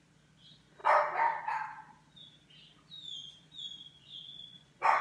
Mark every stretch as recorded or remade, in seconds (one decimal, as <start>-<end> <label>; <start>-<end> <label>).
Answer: 0.0-0.8 recorded; 0.8-1.4 remade; 1.4-3.2 recorded; 3.2-5.0 remade